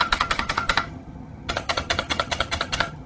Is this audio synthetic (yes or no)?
yes